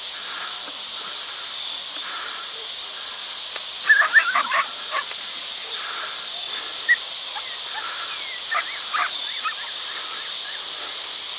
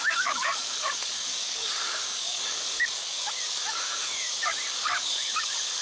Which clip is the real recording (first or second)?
first